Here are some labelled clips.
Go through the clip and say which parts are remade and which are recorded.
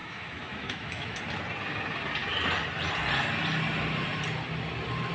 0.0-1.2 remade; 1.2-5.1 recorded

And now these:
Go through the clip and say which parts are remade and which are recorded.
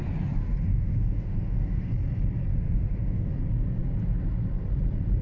0.0-0.7 recorded; 0.7-1.9 remade; 1.9-2.5 recorded; 2.5-3.3 remade; 3.3-5.2 recorded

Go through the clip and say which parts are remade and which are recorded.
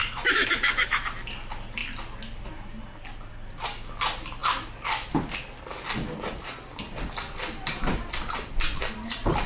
0.0-1.0 remade; 1.0-9.5 recorded